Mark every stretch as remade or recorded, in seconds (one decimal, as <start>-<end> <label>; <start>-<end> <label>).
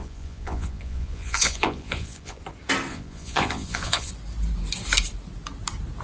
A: 0.0-2.4 remade; 2.4-2.9 recorded; 2.9-4.1 remade; 4.1-6.0 recorded